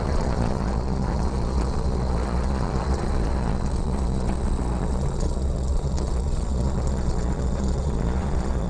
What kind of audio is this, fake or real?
fake